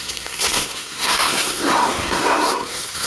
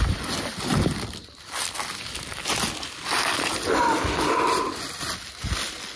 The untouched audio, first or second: second